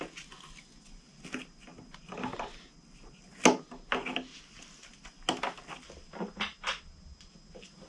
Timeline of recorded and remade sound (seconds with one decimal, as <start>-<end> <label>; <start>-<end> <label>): 0.0-7.9 recorded